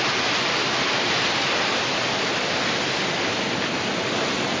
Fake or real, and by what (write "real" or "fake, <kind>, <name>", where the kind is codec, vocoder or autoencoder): real